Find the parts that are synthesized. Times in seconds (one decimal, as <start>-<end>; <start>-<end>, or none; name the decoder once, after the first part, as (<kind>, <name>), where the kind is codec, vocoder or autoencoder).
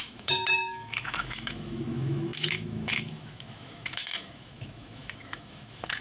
0.0-6.0 (autoencoder, DAC-VAE)